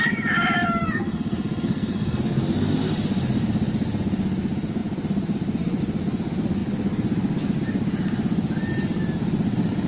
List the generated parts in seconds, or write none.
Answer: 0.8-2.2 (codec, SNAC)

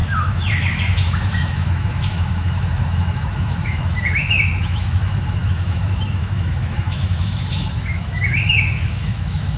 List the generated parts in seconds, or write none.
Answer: 0.0-9.6 (autoencoder, DAC-VAE)

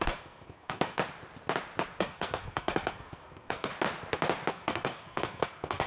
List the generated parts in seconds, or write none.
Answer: 0.0-1.0 (codec, SNAC); 2.0-3.7; 4.5-5.9

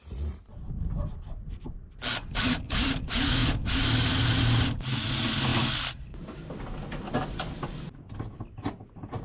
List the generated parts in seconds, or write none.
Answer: none

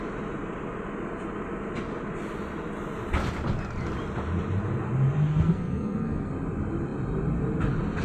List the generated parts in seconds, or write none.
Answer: 5.3-6.3 (codec, SNAC)

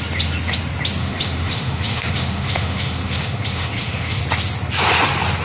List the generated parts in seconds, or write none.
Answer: 1.0-4.2 (autoencoder, DAC-VAE)

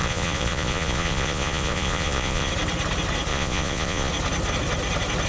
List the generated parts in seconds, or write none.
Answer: 0.0-2.5 (vocoder, Vocos); 3.3-4.1